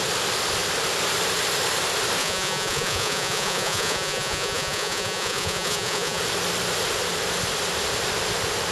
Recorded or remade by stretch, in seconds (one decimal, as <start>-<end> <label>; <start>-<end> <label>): 0.0-2.2 recorded; 2.2-6.2 remade; 6.2-8.7 recorded

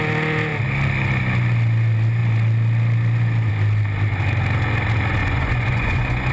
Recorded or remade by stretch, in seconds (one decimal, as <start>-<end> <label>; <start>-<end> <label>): 0.0-5.2 recorded; 5.2-6.3 remade

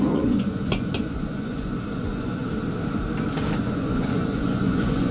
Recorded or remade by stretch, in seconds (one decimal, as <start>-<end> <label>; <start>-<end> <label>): 0.0-2.4 remade; 2.4-3.6 recorded; 3.6-5.1 remade

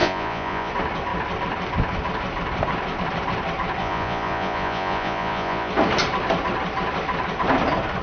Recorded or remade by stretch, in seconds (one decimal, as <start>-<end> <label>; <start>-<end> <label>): 0.0-0.7 remade; 0.7-3.8 recorded; 3.8-5.7 remade; 5.7-8.0 recorded

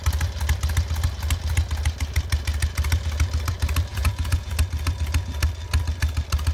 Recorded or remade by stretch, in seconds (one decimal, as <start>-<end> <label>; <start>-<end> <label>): 0.0-3.9 recorded; 3.9-4.5 remade; 4.5-6.5 recorded

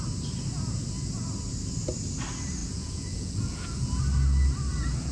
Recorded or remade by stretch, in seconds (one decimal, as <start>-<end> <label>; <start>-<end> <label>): 0.0-2.6 recorded; 2.6-4.0 remade; 4.0-5.1 recorded